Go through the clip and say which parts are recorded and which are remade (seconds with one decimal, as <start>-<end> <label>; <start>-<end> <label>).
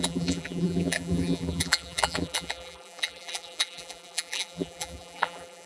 0.0-5.7 remade